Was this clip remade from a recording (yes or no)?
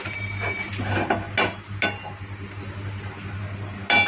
no